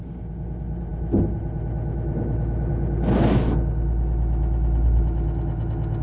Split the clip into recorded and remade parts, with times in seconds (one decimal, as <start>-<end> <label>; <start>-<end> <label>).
0.0-6.0 recorded